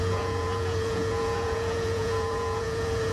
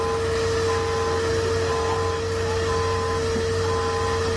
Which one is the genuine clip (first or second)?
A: second